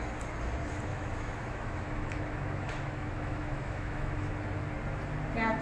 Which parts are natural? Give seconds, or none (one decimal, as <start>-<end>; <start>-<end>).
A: 0.0-0.9; 4.3-5.6